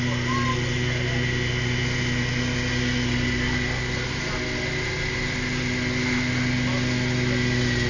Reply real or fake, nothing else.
real